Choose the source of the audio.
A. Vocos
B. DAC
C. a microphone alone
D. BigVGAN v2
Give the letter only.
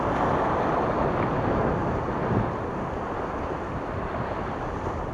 C